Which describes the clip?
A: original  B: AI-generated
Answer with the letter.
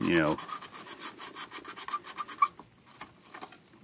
A